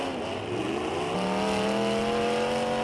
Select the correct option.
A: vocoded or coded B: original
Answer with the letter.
B